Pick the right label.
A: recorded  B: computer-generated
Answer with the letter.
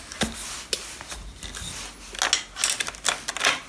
A